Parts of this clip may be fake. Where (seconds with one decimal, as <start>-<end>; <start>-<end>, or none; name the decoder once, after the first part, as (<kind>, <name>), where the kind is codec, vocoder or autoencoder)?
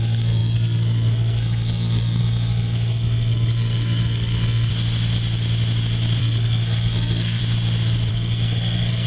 0.0-4.7 (codec, SNAC); 6.2-7.4; 8.1-9.1